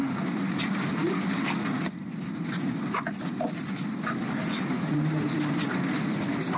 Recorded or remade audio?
recorded